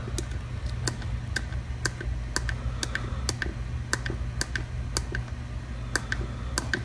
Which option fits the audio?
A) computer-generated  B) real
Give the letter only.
B